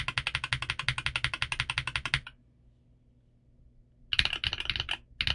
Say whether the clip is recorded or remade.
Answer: recorded